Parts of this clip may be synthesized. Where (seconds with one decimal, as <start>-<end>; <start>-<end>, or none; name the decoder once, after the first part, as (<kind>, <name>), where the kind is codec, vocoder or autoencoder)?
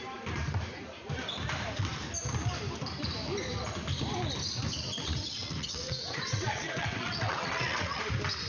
4.7-8.0 (vocoder, WaveNeXt)